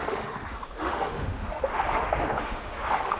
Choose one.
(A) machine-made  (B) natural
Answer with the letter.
A